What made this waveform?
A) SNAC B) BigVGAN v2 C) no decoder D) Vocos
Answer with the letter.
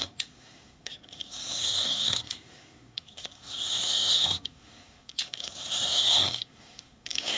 A